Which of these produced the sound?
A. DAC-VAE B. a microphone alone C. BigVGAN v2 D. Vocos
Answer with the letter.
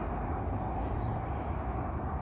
B